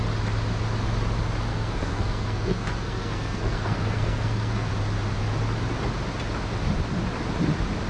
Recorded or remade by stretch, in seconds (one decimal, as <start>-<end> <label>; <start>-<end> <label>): 0.0-1.5 recorded; 1.5-4.7 remade; 4.7-7.9 recorded